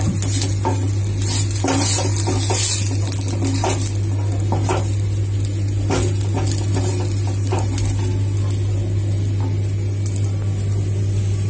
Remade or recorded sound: recorded